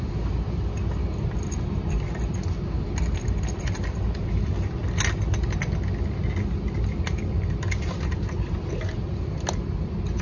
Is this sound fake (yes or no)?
no